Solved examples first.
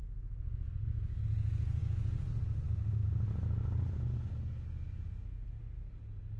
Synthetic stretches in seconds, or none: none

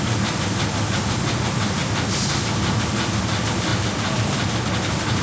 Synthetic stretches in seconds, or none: none

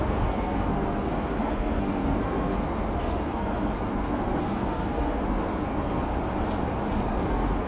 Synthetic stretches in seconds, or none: 0.0-6.1 (codec, SNAC); 7.0-7.7